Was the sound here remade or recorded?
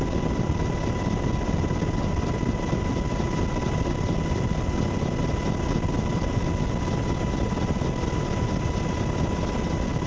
recorded